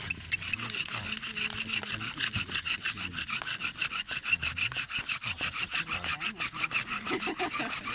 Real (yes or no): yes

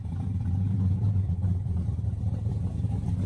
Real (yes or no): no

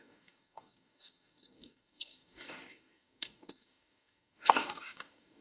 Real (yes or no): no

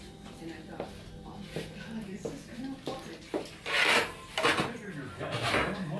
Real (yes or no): yes